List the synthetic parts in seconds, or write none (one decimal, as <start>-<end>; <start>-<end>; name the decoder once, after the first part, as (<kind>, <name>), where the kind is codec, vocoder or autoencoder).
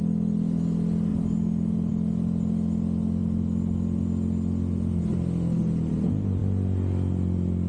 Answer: none